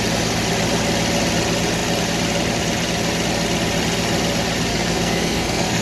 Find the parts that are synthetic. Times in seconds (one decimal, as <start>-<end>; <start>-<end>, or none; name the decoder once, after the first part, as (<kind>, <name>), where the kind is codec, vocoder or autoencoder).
4.7-5.8 (codec, SNAC)